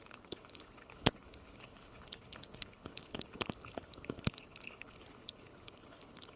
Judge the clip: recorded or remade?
remade